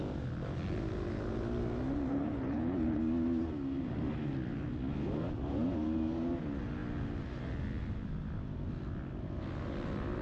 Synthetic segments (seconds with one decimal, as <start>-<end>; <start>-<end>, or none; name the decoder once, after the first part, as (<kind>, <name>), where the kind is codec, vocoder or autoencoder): 2.1-3.0 (codec, HILCodec)